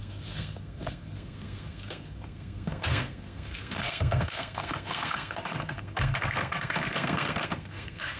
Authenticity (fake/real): fake